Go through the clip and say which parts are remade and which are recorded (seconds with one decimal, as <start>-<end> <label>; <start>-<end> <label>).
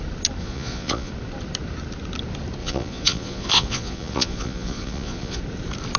0.0-0.4 recorded; 0.4-1.1 remade; 1.1-2.6 recorded; 2.6-5.4 remade; 5.4-6.0 recorded